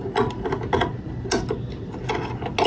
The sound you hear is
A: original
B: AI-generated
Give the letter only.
A